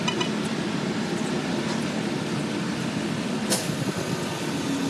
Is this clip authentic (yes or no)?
yes